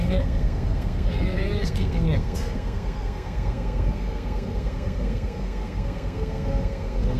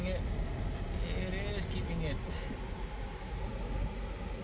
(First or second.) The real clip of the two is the second